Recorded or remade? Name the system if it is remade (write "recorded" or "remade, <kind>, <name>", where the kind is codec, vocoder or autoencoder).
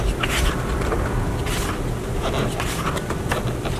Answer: recorded